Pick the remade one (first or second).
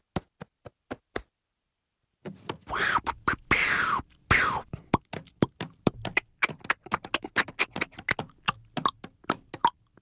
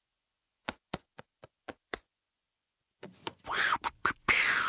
second